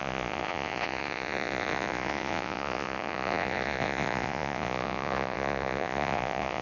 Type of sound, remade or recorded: remade